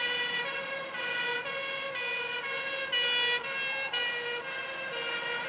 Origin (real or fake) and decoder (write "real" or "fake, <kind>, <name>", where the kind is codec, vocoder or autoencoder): real